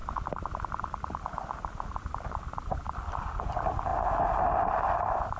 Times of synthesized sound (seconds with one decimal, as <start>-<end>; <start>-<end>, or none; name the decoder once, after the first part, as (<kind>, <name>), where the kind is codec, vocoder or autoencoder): none